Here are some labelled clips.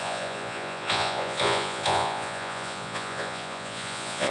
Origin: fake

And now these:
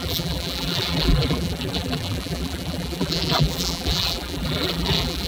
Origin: fake